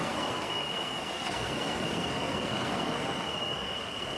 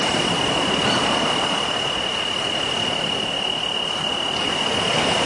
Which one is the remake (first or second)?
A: first